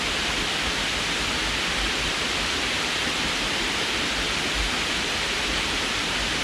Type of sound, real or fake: real